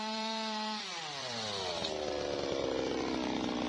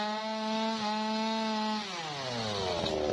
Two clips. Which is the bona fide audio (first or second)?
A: second